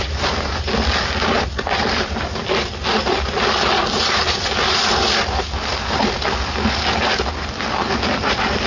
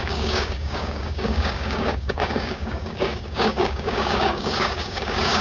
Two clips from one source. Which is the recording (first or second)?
first